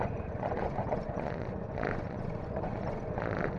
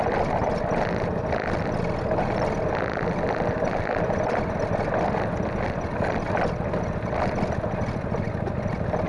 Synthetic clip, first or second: first